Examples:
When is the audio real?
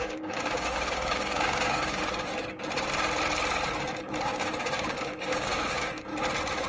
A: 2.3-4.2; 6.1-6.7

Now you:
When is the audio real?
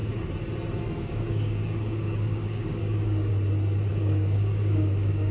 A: 0.0-0.8; 3.3-3.9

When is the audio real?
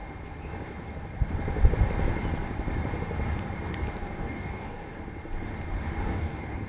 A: 0.0-4.0; 5.0-5.9